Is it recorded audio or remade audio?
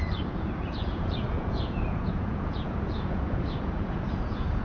remade